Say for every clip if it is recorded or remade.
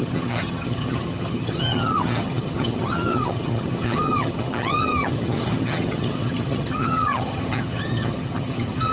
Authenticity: remade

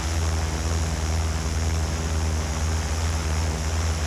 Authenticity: recorded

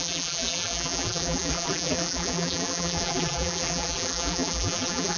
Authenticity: remade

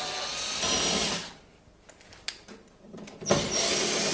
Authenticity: recorded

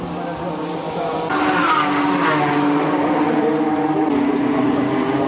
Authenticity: recorded